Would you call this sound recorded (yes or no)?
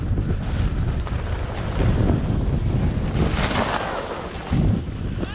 yes